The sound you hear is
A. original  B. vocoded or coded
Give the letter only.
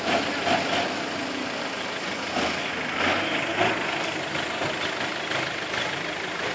A